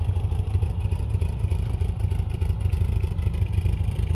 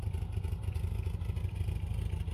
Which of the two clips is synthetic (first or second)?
first